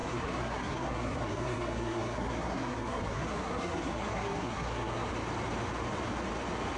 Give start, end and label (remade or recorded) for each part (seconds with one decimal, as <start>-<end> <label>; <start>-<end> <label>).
0.0-5.1 remade; 5.1-6.8 recorded